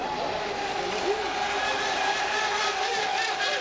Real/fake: real